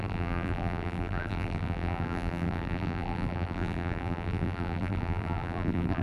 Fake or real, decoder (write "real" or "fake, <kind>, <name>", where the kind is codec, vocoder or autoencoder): fake, vocoder, BigVGAN v2